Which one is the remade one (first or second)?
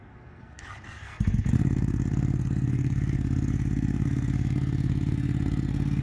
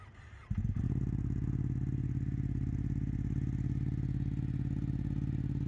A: first